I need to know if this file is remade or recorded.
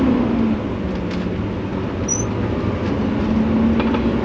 recorded